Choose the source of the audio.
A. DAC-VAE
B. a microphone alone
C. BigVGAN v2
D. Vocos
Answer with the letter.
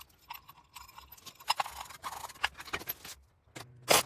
B